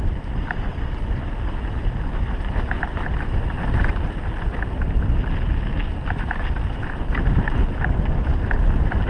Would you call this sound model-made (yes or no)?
no